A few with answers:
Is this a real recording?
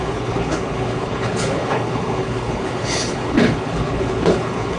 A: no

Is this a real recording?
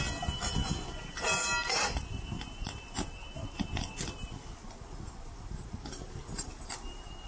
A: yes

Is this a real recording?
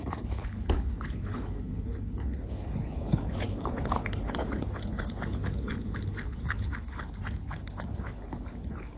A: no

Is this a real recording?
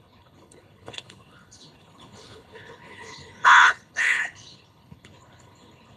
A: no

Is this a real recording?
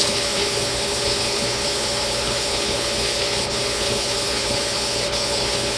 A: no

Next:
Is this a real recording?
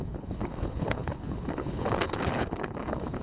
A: no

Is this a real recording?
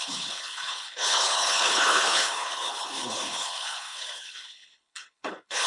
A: no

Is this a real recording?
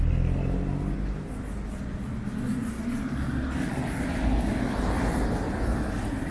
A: yes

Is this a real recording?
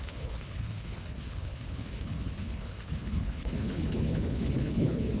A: no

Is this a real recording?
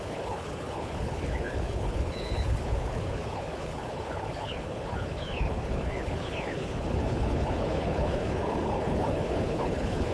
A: no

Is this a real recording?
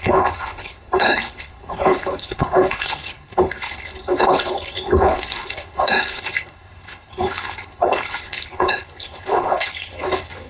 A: no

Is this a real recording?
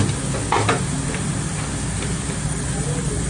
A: yes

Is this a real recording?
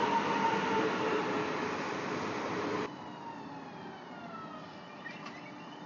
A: yes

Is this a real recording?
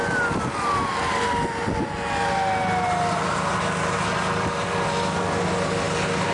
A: yes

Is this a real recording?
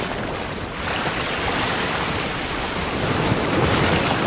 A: yes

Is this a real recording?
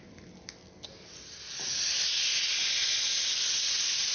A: yes